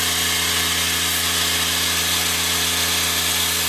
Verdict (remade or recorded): recorded